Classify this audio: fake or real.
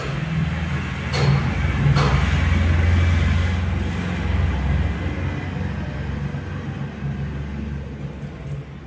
real